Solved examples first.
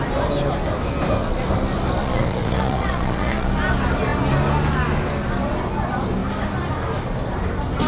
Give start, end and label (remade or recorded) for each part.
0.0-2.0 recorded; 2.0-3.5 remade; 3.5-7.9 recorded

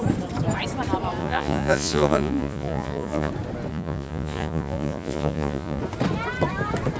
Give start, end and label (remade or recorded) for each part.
0.0-1.2 recorded; 1.2-3.3 remade; 3.3-3.7 recorded; 3.7-5.8 remade; 5.8-7.0 recorded

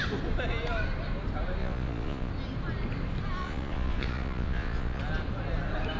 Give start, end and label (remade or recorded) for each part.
0.0-1.6 recorded; 1.6-2.3 remade; 2.3-3.4 recorded; 3.4-5.0 remade; 5.0-6.0 recorded